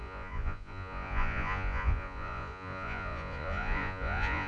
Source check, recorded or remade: remade